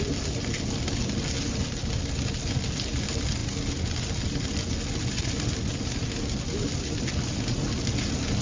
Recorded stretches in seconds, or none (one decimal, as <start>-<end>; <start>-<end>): 0.0-8.4